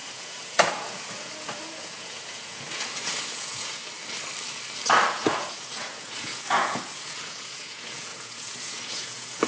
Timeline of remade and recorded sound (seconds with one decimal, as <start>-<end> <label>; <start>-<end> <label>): 0.0-3.8 remade; 3.8-5.1 recorded; 5.1-9.5 remade